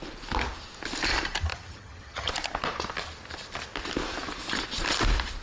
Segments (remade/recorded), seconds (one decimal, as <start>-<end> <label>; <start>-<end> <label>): 0.0-1.5 recorded; 1.5-2.3 remade; 2.3-5.4 recorded